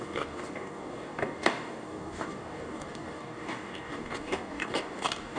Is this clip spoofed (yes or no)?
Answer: yes